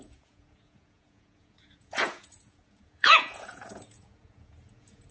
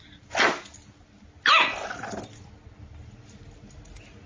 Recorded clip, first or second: second